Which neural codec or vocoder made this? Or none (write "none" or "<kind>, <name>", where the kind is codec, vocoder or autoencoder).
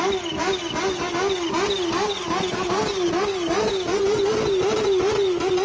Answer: none